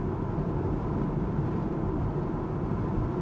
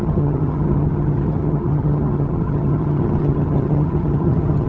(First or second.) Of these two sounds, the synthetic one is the second